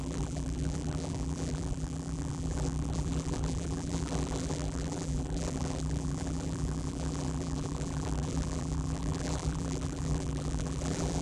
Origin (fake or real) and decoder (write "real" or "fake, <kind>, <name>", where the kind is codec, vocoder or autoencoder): fake, vocoder, BigVGAN v2